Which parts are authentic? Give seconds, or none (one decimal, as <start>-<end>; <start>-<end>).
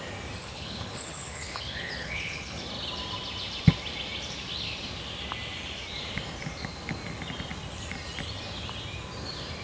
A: 0.0-0.4; 2.6-9.6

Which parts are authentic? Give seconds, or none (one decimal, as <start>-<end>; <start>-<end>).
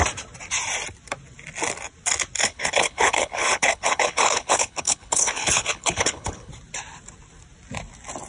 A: 0.0-2.4; 6.5-8.3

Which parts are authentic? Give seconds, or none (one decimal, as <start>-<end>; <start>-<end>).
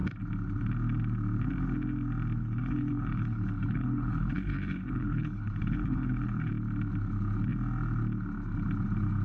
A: 0.0-2.4; 6.5-9.2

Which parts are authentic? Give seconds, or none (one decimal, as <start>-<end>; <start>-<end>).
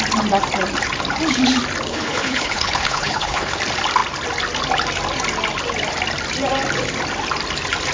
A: 0.0-1.9; 3.6-7.9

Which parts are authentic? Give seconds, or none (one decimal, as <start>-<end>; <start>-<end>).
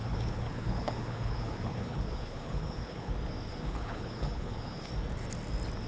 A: 3.1-3.5; 4.9-5.9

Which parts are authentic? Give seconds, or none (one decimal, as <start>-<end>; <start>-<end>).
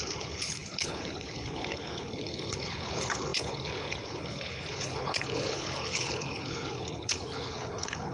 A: none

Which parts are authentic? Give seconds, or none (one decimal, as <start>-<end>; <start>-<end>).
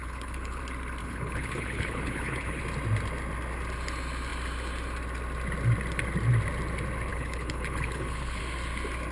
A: 0.6-1.0; 2.6-7.1; 8.4-9.1